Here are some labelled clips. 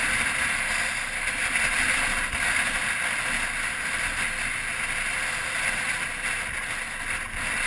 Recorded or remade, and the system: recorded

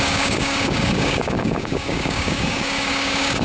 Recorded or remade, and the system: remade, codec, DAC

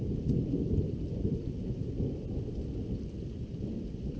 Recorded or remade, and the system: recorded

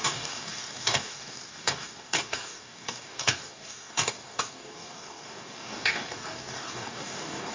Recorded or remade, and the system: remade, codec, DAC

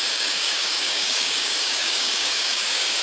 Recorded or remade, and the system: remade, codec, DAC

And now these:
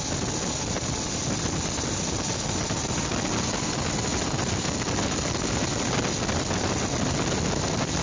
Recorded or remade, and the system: recorded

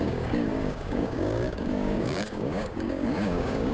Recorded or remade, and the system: remade, codec, DAC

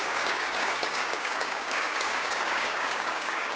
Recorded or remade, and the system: remade, codec, DAC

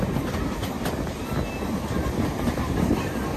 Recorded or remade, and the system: recorded